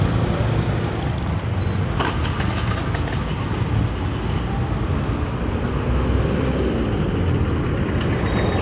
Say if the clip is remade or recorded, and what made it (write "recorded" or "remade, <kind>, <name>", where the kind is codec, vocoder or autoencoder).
recorded